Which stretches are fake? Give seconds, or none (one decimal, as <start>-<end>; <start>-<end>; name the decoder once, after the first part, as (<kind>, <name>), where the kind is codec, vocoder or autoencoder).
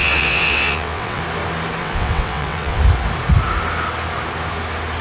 0.0-1.2 (vocoder, WaveNeXt); 1.8-2.8